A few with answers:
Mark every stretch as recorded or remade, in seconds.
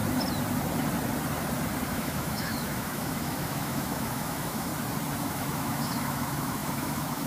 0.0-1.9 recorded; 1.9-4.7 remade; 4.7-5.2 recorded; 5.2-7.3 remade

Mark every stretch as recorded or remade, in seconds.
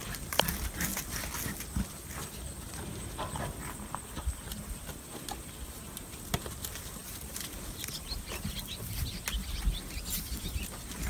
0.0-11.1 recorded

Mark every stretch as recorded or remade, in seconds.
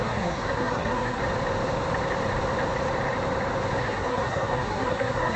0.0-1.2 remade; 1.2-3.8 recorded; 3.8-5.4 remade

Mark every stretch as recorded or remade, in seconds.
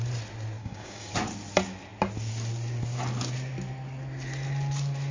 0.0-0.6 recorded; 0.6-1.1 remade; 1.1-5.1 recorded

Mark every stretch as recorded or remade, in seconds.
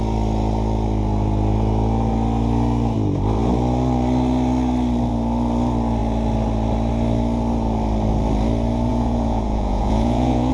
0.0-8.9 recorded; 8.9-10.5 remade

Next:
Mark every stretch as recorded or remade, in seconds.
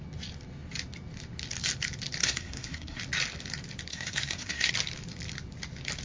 0.0-2.2 recorded; 2.2-3.0 remade; 3.0-3.9 recorded; 3.9-4.7 remade; 4.7-6.0 recorded